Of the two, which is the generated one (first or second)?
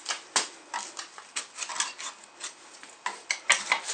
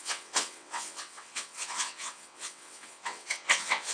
second